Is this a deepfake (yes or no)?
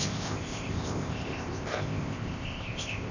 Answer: yes